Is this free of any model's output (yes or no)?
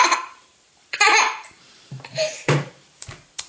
no